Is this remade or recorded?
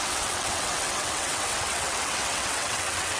remade